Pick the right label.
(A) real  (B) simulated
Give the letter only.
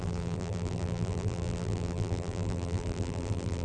B